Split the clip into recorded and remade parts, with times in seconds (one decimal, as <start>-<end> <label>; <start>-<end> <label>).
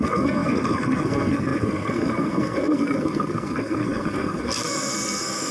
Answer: 0.0-5.5 remade